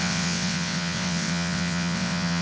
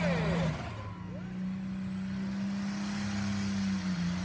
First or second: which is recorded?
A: second